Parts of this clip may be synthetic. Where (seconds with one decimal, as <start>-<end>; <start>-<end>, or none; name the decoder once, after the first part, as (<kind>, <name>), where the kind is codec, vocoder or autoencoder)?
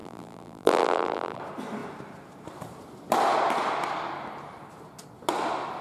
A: 0.0-1.4 (vocoder, BigVGAN v2)